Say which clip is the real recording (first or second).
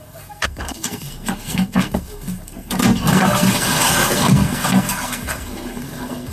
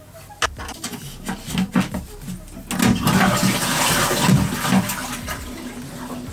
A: second